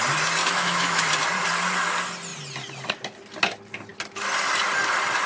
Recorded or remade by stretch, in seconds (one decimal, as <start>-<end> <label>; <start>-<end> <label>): 0.0-0.4 recorded; 0.4-1.1 remade; 1.1-5.3 recorded